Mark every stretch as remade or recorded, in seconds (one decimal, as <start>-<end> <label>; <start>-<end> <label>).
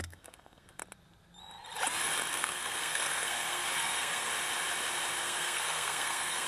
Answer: 0.0-0.8 remade; 0.8-2.3 recorded; 2.3-4.3 remade; 4.3-5.2 recorded; 5.2-6.5 remade